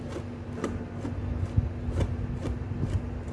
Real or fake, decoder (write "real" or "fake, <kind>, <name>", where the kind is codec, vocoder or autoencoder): real